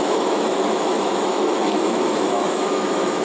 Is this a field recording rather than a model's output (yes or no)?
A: no